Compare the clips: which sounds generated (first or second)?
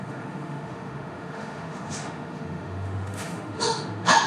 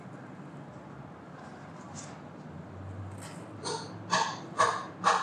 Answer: first